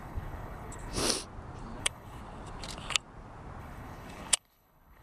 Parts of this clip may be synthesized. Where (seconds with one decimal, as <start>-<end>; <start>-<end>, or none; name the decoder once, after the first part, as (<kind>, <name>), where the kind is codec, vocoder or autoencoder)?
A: 0.0-1.0 (codec, HILCodec); 1.8-2.2; 3.6-5.0